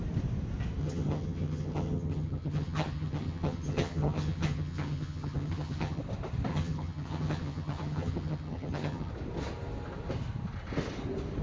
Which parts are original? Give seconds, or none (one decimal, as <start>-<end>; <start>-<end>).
0.0-0.8; 6.0-6.5; 9.1-11.4

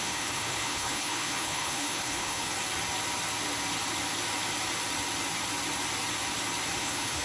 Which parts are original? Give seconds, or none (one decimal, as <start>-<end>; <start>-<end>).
2.5-6.8

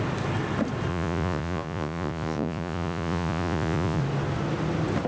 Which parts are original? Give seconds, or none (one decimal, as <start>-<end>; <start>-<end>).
0.0-0.9; 4.0-5.1

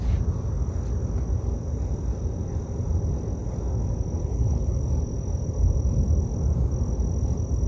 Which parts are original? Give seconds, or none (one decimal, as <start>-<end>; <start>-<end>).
0.0-4.2; 4.8-7.7

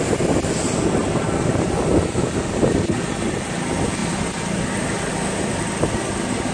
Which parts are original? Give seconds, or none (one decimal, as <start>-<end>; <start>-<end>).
0.0-6.5

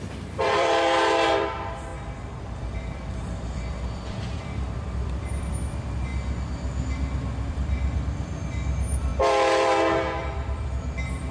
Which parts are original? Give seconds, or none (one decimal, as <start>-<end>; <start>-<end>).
1.9-2.6; 6.1-7.5; 9.1-10.2

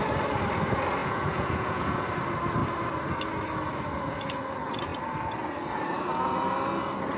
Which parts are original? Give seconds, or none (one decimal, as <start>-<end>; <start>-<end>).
0.0-1.0; 2.1-7.2

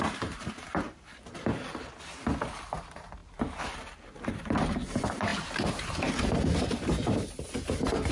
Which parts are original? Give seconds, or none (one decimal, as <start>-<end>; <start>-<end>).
1.6-2.5